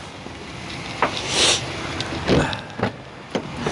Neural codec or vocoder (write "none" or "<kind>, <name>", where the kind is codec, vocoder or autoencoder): none